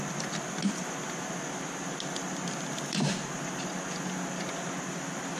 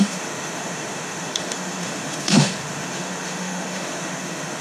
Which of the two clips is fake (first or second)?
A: second